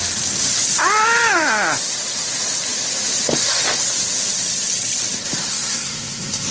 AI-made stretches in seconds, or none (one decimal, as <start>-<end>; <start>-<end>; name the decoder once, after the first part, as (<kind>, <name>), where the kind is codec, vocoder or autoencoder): 5.5-6.5 (codec, SNAC)